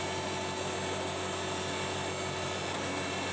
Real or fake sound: real